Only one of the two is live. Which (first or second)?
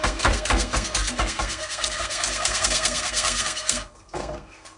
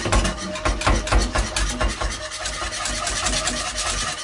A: second